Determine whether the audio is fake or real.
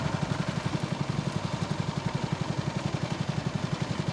real